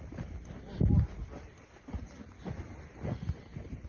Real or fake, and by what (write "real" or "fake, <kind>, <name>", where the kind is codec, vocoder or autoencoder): real